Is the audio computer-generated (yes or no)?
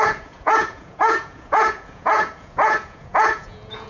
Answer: yes